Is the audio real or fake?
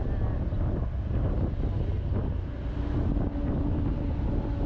real